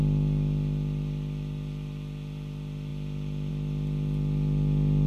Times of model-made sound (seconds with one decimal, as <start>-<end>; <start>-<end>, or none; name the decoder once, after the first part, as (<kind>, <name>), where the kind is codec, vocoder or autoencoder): 0.0-5.1 (vocoder, BigVGAN v2)